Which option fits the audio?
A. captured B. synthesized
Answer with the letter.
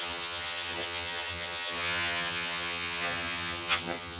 B